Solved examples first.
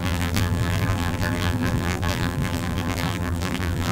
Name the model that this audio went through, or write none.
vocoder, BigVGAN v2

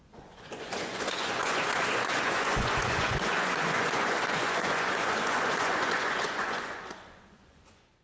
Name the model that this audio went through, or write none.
vocoder, Vocos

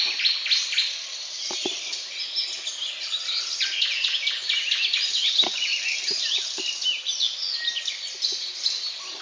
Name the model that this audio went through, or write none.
none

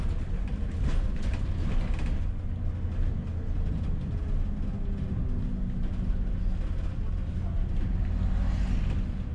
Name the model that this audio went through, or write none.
none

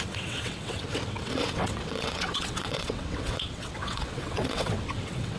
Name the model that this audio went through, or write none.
vocoder, WaveNeXt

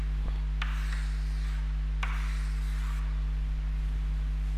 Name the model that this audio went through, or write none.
none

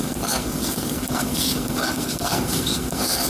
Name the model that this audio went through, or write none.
codec, SNAC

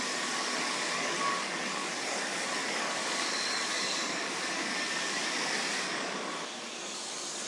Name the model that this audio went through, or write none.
codec, DAC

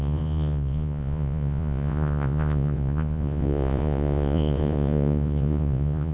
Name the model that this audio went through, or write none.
vocoder, Vocos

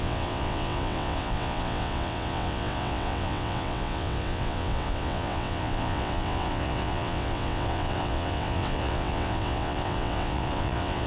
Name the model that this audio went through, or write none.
vocoder, WaveNeXt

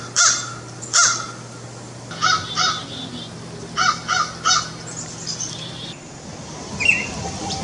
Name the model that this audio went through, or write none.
vocoder, BigVGAN v2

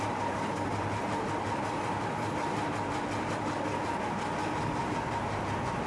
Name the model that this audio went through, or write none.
none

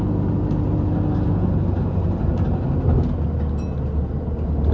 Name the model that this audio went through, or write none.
none